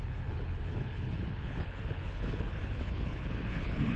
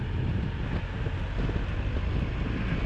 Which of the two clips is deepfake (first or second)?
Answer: first